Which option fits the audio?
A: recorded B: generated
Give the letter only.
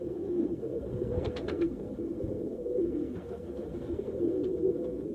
B